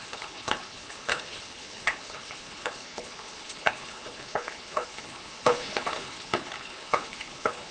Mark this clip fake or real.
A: fake